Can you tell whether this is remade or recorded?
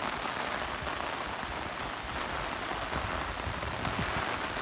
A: recorded